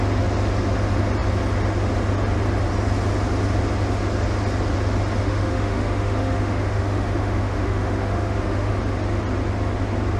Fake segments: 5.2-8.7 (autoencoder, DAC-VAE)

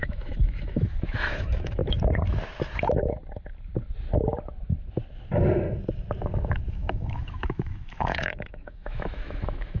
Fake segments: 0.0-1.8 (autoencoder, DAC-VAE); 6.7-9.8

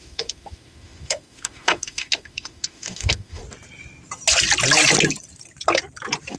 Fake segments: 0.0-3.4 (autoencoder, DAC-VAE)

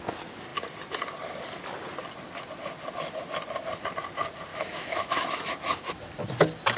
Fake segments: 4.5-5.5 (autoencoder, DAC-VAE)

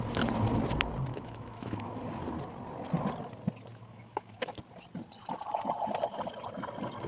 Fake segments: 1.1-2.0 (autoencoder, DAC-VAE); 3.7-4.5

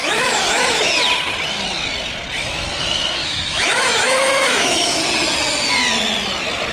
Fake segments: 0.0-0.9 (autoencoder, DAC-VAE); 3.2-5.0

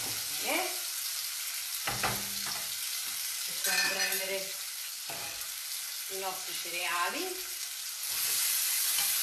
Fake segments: none

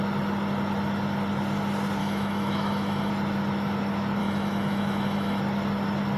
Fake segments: 2.0-3.1 (autoencoder, DAC-VAE); 4.2-5.4